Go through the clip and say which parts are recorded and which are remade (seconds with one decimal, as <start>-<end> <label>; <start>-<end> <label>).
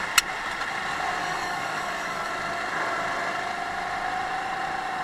0.0-1.2 recorded; 1.2-2.3 remade; 2.3-5.0 recorded